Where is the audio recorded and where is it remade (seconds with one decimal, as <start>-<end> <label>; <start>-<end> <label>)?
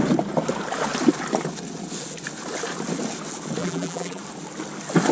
0.0-3.6 recorded; 3.6-4.2 remade; 4.2-5.1 recorded